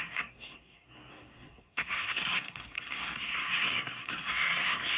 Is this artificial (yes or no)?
yes